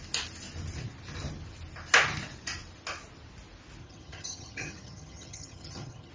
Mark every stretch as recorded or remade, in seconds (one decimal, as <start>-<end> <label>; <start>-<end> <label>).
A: 0.0-3.8 recorded; 3.8-6.1 remade